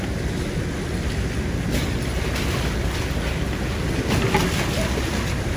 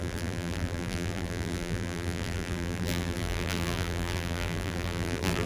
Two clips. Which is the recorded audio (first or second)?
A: first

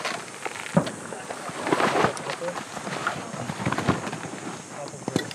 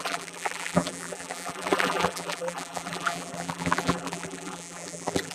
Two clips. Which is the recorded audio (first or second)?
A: first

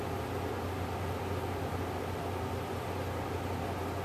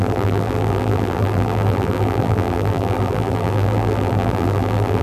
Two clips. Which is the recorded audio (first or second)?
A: first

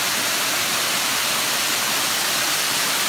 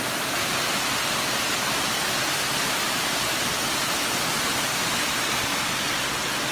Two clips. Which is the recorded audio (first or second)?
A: second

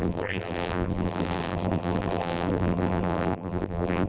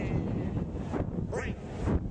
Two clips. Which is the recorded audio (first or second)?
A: second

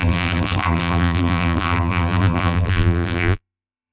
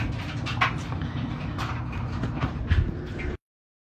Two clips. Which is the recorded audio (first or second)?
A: second